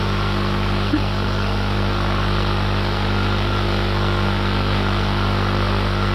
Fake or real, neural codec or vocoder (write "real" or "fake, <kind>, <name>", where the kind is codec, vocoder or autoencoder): fake, codec, SNAC